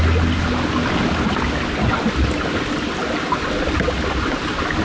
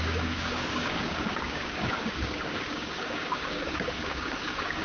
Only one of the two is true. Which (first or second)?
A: first